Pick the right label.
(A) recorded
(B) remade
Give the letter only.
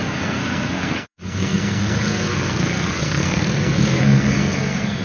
B